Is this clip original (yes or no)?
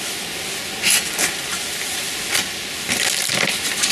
yes